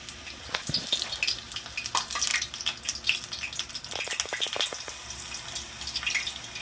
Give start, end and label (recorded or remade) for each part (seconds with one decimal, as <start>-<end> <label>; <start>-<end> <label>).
0.0-6.6 recorded